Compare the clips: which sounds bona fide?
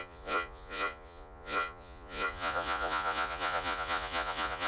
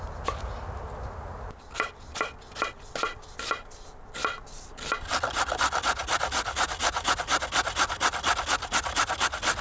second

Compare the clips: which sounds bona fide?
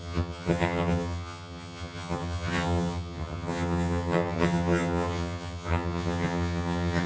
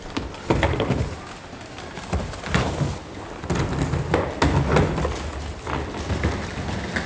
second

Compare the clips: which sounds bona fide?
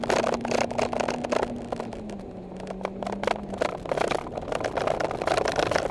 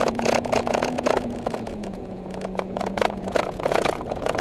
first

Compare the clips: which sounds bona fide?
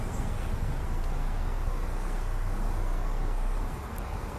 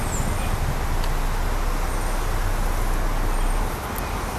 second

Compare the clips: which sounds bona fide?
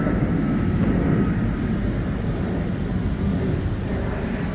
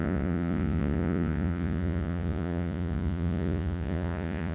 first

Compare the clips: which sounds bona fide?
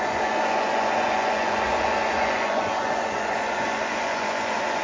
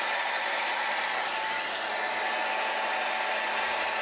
second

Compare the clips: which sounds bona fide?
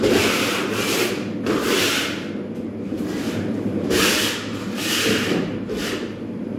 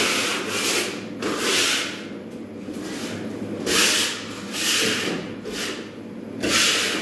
second